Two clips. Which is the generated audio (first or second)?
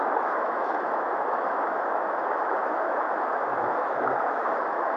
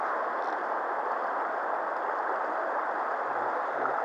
first